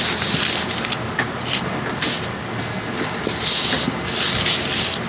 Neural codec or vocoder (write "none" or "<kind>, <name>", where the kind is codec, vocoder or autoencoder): none